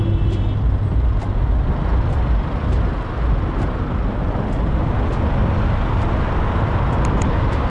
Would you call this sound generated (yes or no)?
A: no